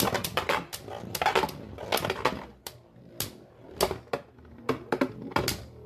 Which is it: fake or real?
real